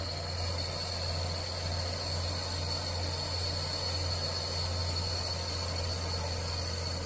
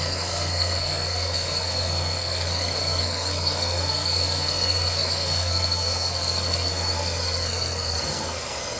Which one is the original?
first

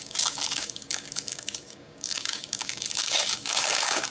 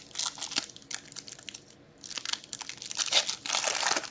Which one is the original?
second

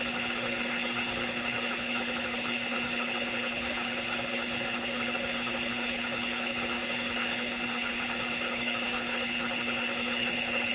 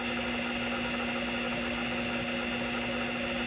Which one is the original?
second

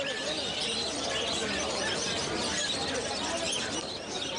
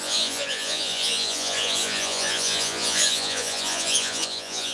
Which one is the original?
first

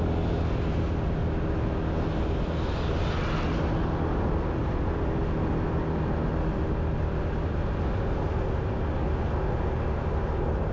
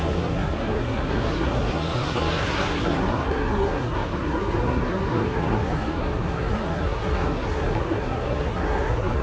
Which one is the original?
first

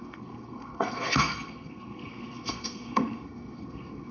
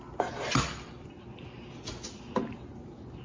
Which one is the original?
second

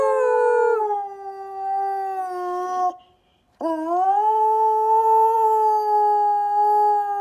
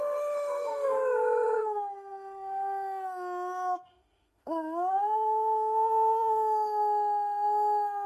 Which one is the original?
first